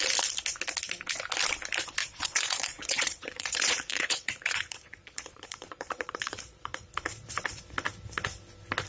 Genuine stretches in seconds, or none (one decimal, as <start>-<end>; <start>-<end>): 0.0-2.0; 6.9-8.9